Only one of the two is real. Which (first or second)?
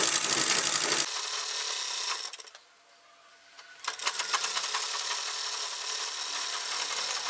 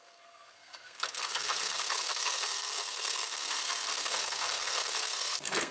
first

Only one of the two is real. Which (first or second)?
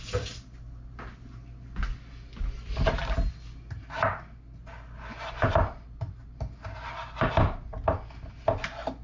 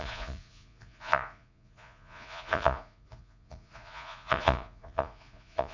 first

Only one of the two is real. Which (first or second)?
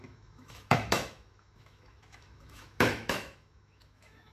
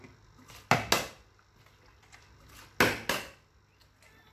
second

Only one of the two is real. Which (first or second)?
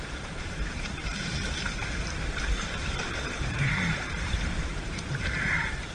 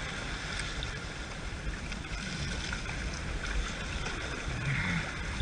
second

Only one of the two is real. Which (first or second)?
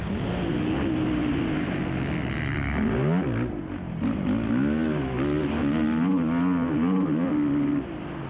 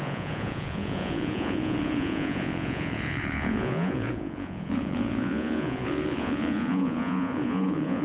first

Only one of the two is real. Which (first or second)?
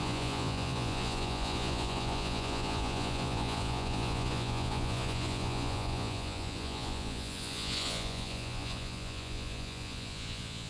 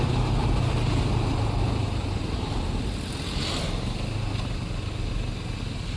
second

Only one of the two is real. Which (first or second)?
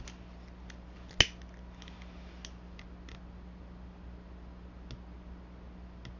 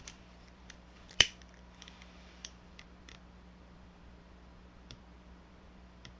first